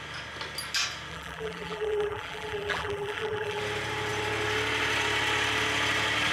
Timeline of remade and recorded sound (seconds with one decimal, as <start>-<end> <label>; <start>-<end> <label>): 0.0-1.1 recorded; 1.1-3.6 remade; 3.6-6.3 recorded